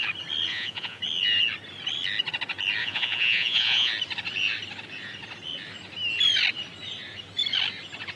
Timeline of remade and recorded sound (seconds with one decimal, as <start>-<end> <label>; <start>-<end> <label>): 0.0-0.5 recorded; 0.5-1.0 remade; 1.0-2.8 recorded; 2.8-3.9 remade; 3.9-8.2 recorded